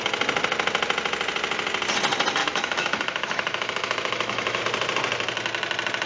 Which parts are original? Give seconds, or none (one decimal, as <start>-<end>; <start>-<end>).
0.0-2.4; 4.6-6.1